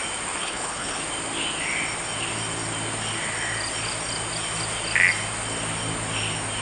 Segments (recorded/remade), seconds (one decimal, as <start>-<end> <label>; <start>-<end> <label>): 0.0-0.4 recorded; 0.4-1.0 remade; 1.0-6.6 recorded